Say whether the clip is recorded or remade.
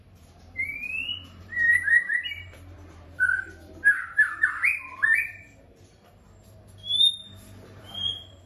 remade